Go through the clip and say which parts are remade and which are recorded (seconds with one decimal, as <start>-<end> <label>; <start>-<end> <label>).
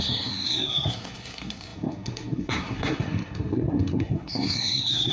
0.0-5.1 remade